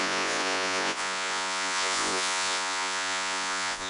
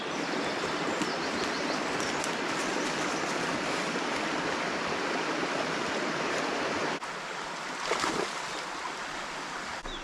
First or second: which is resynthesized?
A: first